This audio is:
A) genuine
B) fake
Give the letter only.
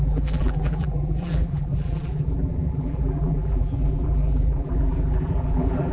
B